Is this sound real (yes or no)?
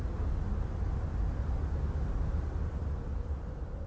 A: yes